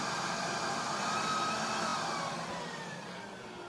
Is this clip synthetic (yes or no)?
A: no